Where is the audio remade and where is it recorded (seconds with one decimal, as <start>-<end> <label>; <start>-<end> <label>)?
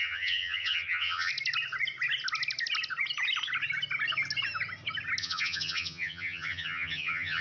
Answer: 0.0-1.3 remade; 1.3-5.2 recorded; 5.2-7.4 remade